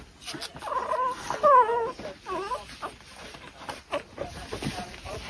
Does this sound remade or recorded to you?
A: recorded